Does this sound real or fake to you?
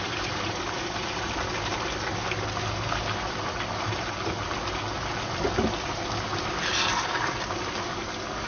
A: real